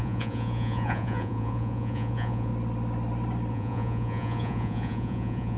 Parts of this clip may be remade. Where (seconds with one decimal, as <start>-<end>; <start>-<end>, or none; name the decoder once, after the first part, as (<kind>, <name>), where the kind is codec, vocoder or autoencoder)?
0.0-2.5 (vocoder, Vocos); 3.5-5.6